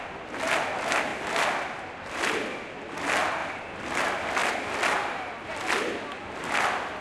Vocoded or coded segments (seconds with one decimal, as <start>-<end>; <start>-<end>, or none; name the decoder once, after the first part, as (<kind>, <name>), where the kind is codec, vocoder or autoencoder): none